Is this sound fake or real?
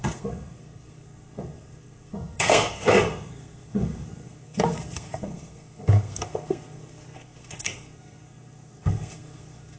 fake